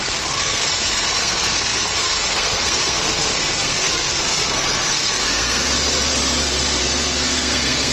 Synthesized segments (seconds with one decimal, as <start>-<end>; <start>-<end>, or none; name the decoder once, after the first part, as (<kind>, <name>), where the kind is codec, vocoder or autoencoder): 0.0-5.7 (codec, SNAC); 6.4-7.9